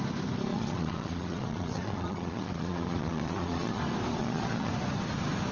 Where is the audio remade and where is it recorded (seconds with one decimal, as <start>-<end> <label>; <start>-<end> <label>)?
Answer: 0.0-0.5 recorded; 0.5-3.8 remade; 3.8-4.2 recorded; 4.2-4.7 remade; 4.7-5.5 recorded